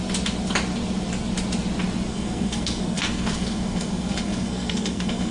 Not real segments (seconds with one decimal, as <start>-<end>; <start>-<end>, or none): 2.1-5.3

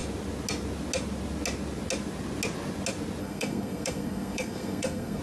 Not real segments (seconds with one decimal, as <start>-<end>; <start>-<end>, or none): 3.2-5.2